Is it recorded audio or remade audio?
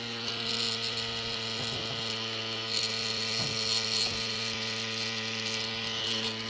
recorded